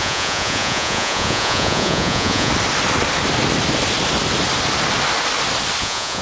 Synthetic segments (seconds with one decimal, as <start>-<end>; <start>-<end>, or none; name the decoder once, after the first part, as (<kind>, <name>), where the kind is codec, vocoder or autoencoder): 0.0-2.5 (vocoder, Vocos); 5.8-6.2

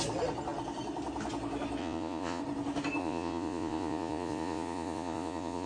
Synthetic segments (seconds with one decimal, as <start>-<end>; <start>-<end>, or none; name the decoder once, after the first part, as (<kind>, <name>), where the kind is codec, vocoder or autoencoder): 1.8-2.4 (vocoder, Vocos); 3.0-5.7

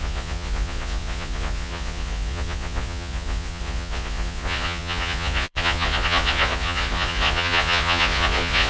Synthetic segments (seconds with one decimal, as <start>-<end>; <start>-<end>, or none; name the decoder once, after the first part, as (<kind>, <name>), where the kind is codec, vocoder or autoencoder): 0.0-8.7 (vocoder, Vocos)